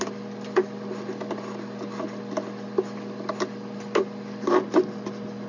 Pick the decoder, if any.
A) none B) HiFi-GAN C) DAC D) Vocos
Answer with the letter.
A